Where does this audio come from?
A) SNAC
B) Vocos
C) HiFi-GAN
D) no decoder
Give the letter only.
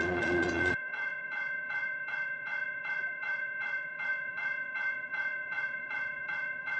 B